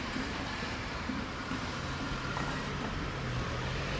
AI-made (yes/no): yes